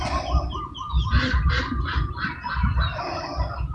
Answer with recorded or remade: recorded